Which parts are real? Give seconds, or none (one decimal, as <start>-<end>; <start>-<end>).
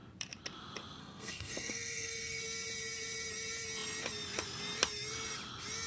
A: 0.0-1.0; 2.4-5.9